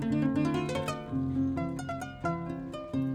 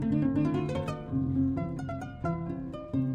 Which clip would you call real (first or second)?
first